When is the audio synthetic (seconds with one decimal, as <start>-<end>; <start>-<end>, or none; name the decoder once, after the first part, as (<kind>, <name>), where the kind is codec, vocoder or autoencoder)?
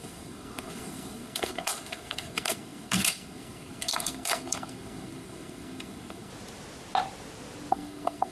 0.0-6.3 (codec, SNAC); 7.7-8.3